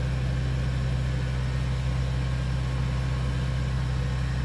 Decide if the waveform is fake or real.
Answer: real